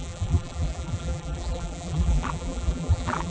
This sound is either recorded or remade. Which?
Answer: remade